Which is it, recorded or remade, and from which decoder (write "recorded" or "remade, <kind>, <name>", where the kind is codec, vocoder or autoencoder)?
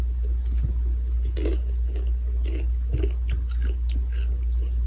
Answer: recorded